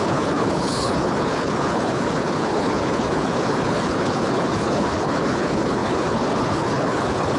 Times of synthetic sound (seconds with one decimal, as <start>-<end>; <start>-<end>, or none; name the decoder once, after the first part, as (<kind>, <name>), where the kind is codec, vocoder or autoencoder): 0.0-7.4 (codec, HILCodec)